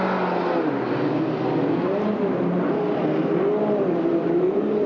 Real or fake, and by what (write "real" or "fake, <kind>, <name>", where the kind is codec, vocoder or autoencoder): real